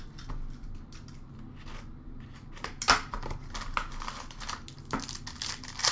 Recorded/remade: recorded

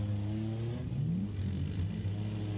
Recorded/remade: recorded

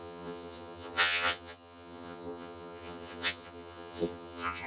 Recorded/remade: remade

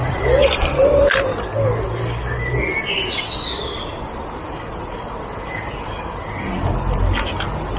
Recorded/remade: recorded